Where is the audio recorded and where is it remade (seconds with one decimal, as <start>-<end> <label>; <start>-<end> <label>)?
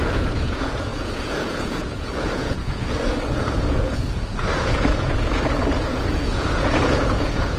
0.0-7.6 remade